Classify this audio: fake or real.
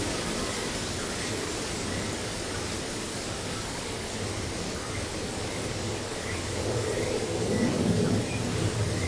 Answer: fake